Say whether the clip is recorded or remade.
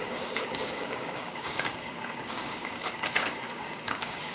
remade